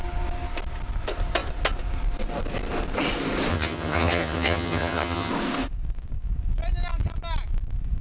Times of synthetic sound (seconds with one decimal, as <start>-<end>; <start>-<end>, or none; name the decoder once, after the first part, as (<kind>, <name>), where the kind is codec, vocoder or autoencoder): 3.5-5.3 (vocoder, HiFi-GAN)